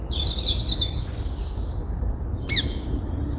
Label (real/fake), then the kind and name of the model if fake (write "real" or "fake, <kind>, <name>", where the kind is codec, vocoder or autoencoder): real